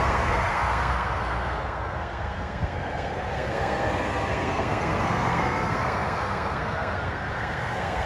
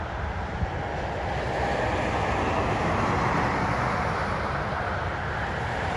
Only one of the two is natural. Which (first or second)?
second